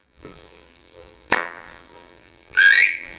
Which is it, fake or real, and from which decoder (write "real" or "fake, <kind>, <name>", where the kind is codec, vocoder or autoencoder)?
fake, vocoder, BigVGAN v2